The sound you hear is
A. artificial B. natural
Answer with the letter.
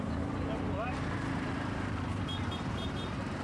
A